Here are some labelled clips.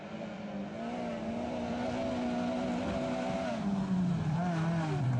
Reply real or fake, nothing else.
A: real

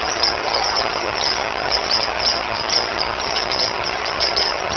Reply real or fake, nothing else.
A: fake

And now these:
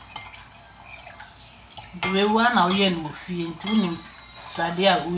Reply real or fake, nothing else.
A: real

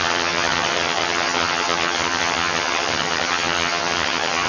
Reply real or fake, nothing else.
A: fake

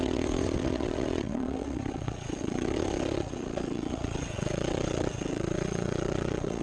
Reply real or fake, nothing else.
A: fake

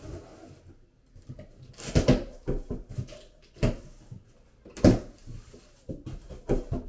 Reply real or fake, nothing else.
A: real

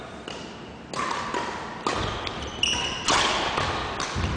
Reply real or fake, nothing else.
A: real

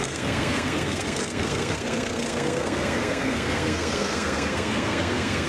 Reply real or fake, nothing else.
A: fake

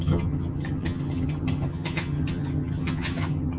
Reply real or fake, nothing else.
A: fake